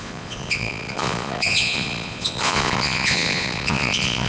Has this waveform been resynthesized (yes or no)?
yes